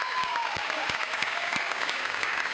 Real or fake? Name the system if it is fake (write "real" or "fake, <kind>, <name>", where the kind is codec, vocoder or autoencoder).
fake, codec, DAC